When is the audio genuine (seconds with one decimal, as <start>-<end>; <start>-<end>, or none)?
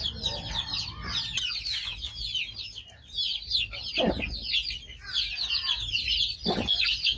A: 0.0-7.2